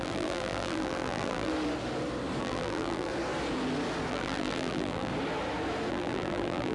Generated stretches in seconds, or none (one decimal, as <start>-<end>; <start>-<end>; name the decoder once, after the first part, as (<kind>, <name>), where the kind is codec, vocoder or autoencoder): 0.0-1.5 (vocoder, BigVGAN v2); 2.4-3.1; 4.1-5.1; 5.9-6.7